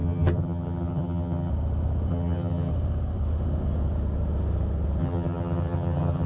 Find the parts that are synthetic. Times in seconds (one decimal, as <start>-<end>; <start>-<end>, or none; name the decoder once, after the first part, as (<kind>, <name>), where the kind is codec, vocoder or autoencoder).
0.0-1.5 (vocoder, HiFi-GAN); 2.1-2.7; 5.0-6.3